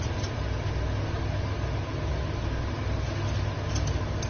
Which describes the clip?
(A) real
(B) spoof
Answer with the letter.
A